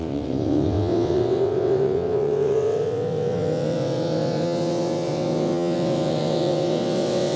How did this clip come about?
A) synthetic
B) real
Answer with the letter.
A